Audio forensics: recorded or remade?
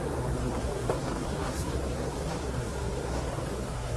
remade